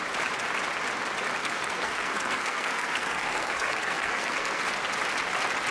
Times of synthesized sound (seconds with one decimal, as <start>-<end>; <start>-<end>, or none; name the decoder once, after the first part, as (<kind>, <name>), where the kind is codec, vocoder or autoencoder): 1.4-4.6 (codec, SNAC)